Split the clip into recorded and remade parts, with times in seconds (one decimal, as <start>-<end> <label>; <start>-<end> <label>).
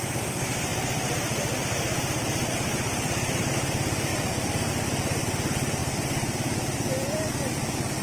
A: 0.0-0.7 recorded; 0.7-3.5 remade; 3.5-4.1 recorded; 4.1-4.7 remade; 4.7-8.0 recorded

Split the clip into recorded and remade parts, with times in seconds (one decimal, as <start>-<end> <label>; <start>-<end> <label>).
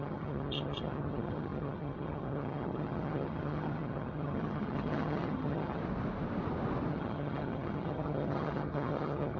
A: 0.0-5.8 remade; 5.8-6.9 recorded; 6.9-9.4 remade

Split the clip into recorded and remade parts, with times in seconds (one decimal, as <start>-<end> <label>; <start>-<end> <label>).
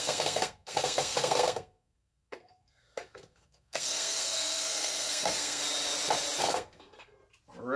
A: 0.0-5.6 remade; 5.6-6.4 recorded; 6.4-7.2 remade; 7.2-7.8 recorded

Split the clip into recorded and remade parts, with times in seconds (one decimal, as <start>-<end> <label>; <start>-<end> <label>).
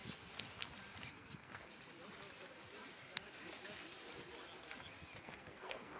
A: 0.0-1.1 recorded; 1.1-1.7 remade; 1.7-5.2 recorded; 5.2-6.0 remade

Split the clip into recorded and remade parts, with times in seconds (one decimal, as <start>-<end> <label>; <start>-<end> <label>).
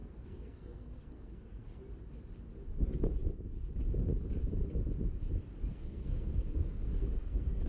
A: 0.0-1.8 remade; 1.8-5.7 recorded; 5.7-7.7 remade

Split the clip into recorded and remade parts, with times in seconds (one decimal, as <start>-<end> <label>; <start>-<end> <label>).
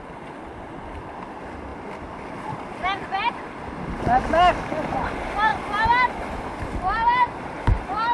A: 0.0-8.1 recorded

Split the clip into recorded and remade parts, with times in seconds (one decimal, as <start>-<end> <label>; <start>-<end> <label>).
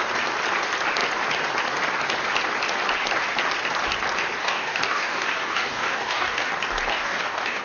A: 0.0-4.4 recorded; 4.4-6.5 remade; 6.5-6.9 recorded; 6.9-7.6 remade